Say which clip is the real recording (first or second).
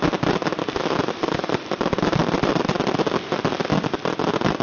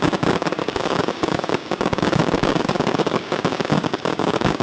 first